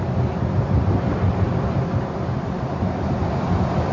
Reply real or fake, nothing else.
fake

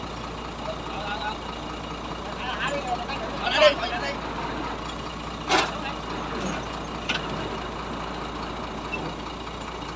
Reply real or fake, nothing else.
real